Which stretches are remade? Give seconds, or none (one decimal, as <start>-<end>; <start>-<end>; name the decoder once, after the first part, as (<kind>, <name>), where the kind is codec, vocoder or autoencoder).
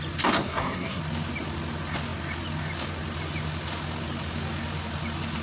0.4-1.0 (codec, SNAC)